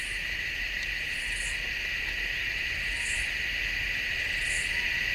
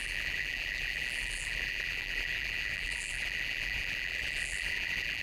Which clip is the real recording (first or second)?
first